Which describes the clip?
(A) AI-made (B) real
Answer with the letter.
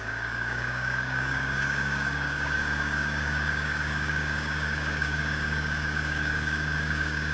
A